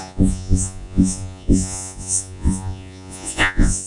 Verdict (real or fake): fake